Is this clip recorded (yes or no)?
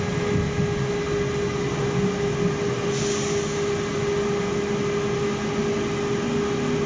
yes